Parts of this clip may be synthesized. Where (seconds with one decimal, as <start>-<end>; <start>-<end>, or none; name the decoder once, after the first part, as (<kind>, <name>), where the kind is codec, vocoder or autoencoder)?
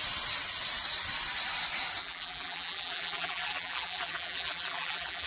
2.0-5.3 (vocoder, BigVGAN v2)